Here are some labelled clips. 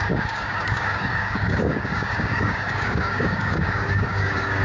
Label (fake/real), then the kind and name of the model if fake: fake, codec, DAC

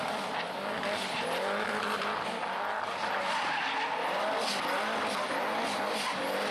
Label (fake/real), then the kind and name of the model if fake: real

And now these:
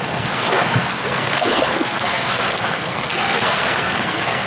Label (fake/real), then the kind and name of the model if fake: fake, codec, SNAC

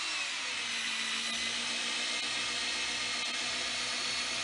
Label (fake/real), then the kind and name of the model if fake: real